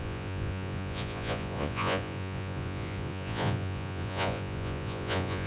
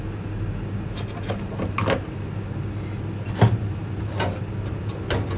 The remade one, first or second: first